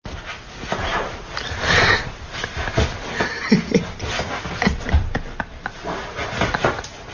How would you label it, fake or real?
real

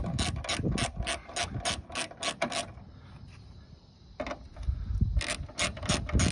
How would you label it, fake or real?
real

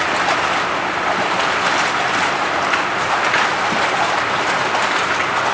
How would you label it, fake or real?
real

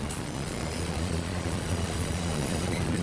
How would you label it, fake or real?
fake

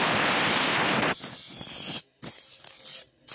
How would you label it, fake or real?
real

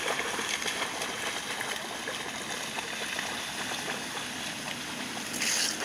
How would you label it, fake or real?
real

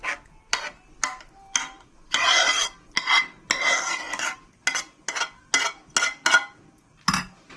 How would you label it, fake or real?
real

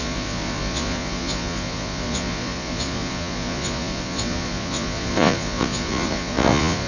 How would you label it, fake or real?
fake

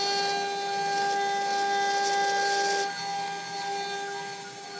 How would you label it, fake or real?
real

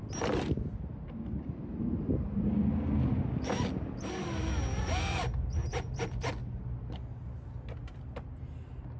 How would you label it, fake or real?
real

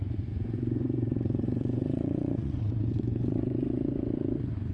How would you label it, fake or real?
fake